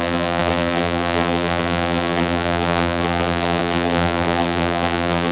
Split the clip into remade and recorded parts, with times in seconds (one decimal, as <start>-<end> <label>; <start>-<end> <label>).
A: 0.0-5.3 remade